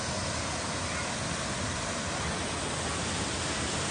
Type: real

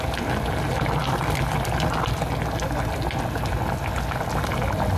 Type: real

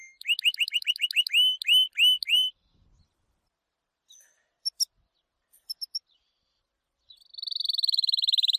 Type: real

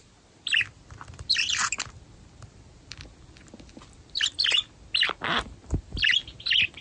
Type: fake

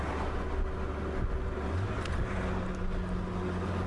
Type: real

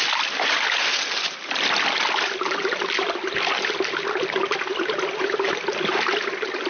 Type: real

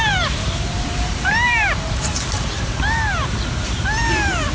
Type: fake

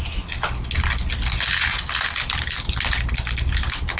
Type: real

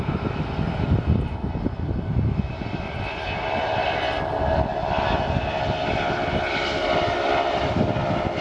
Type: real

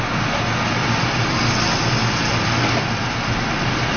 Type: real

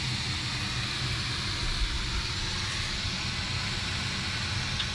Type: real